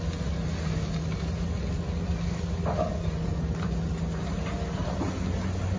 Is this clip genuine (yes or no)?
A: yes